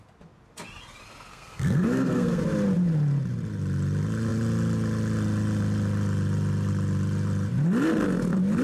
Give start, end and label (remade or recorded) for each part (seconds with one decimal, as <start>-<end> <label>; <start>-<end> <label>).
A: 0.0-1.3 recorded; 1.3-2.4 remade; 2.4-8.6 recorded